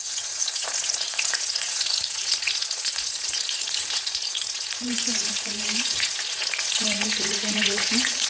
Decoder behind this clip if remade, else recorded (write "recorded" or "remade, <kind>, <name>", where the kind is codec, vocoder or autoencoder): remade, vocoder, Vocos